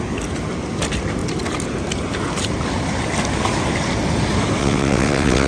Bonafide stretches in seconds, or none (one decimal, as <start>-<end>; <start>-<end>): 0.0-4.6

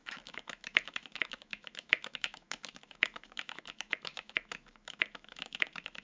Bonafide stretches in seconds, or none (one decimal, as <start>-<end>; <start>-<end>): none

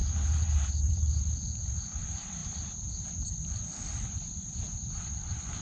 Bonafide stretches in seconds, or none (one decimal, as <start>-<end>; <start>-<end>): 1.2-2.4; 3.3-5.6